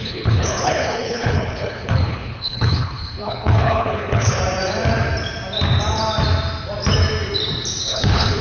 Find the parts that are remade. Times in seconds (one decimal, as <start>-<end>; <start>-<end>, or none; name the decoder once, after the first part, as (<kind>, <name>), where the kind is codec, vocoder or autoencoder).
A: 0.0-4.4 (codec, HILCodec); 7.8-8.4